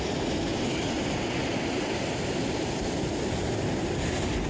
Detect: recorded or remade recorded